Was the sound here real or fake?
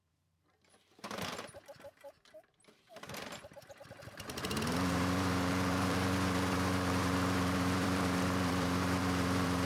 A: fake